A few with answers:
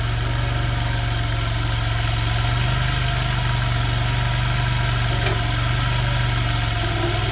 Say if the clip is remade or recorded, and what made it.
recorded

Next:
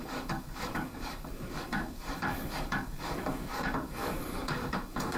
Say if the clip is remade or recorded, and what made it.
remade, codec, DAC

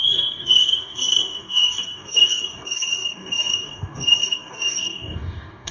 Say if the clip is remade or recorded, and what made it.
remade, codec, DAC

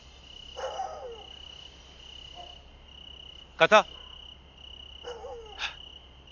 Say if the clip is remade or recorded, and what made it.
recorded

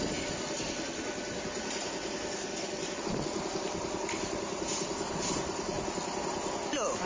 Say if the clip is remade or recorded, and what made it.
recorded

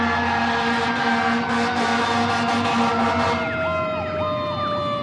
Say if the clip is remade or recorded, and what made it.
recorded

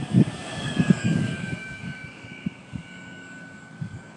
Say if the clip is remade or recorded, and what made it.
remade, codec, DAC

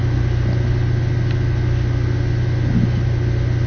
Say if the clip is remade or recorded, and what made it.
recorded